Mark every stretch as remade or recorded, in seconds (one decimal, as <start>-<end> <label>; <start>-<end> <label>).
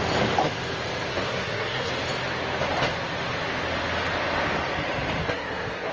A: 0.0-1.1 recorded; 1.1-1.9 remade; 1.9-5.2 recorded; 5.2-5.9 remade